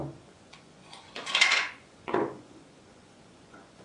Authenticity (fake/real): fake